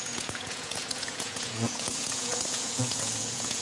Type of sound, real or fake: fake